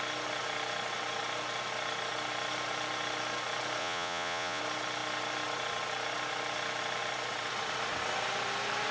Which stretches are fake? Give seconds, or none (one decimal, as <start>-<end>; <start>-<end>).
3.8-4.6